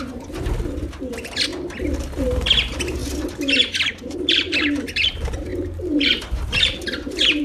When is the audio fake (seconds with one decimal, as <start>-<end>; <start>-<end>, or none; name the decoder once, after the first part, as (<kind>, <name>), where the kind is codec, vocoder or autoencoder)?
0.0-1.5 (vocoder, BigVGAN v2); 2.2-3.0; 3.9-7.4